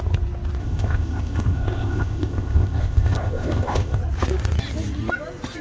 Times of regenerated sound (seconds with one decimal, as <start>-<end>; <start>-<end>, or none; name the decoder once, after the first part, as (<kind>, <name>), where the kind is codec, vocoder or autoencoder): 0.6-4.0 (codec, ZipCodec)